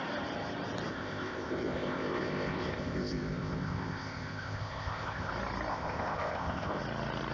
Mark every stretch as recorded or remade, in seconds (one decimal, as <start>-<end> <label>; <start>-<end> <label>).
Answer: 0.0-0.9 recorded; 0.9-5.3 remade; 5.3-5.7 recorded; 5.7-6.8 remade; 6.8-7.3 recorded